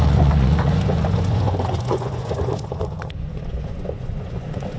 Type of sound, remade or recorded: remade